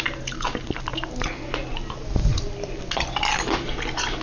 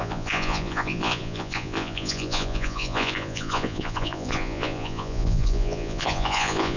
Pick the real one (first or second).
first